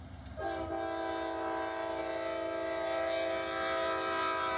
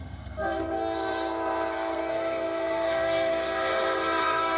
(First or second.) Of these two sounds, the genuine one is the first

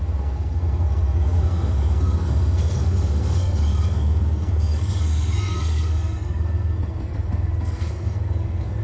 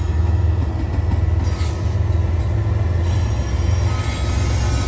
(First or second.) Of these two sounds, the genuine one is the second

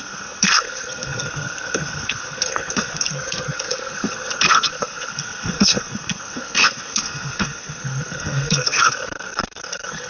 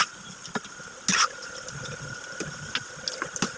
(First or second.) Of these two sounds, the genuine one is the second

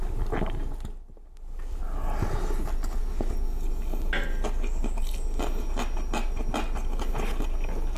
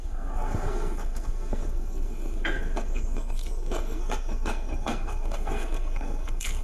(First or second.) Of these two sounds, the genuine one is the first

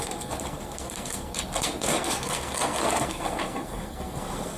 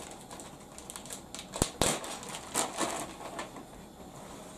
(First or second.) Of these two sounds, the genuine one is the second